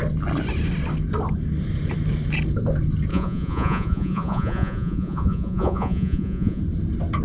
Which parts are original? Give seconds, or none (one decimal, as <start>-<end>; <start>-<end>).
0.0-3.1; 6.6-7.2